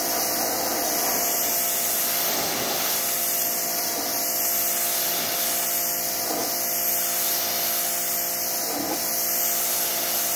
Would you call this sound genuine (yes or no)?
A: yes